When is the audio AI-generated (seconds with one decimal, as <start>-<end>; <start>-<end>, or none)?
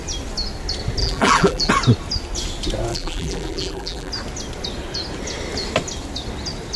1.0-1.7; 2.9-4.1